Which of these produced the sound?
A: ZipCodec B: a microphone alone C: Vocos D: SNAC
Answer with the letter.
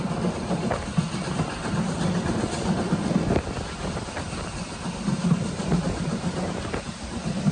B